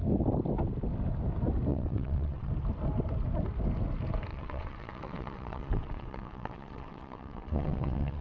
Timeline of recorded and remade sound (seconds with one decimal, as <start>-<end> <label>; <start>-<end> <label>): 0.0-1.7 recorded; 1.7-2.5 remade; 2.5-4.3 recorded; 4.3-8.2 remade